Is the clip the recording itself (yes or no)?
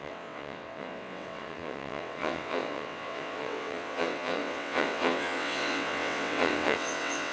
no